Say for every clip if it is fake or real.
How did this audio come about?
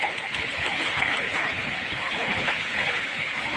fake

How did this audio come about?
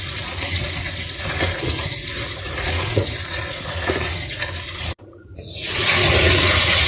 fake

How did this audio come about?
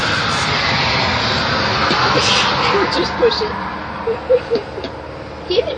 real